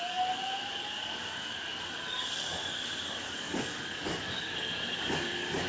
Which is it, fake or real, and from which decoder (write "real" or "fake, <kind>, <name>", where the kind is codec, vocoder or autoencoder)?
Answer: fake, codec, DAC